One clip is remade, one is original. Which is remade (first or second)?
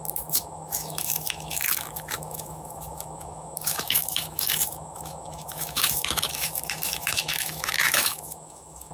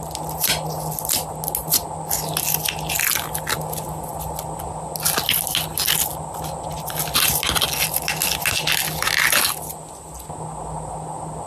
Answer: first